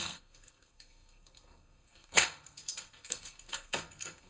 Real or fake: fake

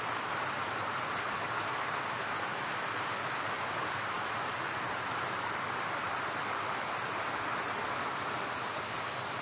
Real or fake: real